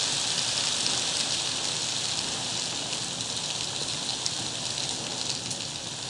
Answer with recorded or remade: recorded